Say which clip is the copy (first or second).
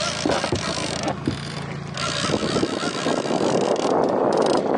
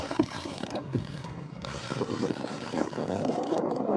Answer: second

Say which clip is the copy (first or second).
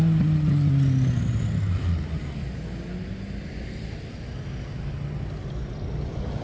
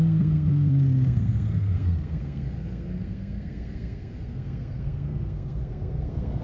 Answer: second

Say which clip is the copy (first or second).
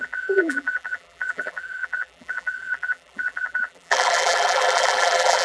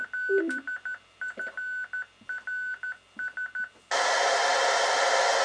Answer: first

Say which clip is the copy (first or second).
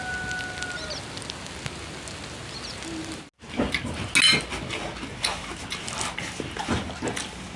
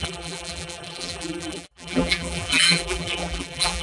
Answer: second